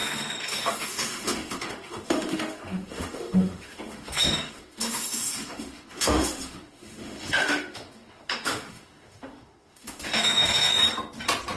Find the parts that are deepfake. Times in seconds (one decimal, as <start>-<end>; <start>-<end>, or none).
0.0-10.8